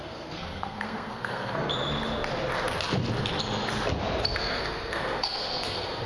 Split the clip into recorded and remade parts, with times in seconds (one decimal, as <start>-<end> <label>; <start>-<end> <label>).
0.0-1.7 remade; 1.7-4.4 recorded; 4.4-6.1 remade